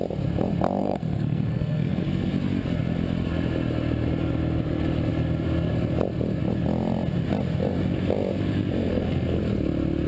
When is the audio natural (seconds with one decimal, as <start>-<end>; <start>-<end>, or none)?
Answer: 0.0-0.8; 2.3-8.9; 9.4-10.1